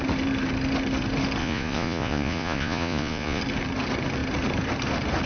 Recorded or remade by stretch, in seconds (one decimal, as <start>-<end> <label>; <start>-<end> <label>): 0.0-1.4 recorded; 1.4-3.4 remade; 3.4-5.3 recorded